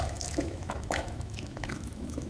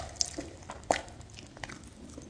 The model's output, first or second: first